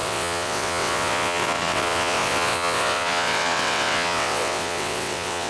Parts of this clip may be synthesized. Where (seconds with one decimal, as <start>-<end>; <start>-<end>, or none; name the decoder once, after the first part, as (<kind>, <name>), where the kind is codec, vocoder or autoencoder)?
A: 0.0-5.5 (vocoder, WaveNeXt)